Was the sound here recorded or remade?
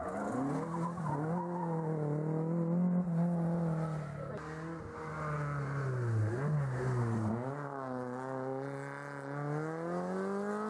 recorded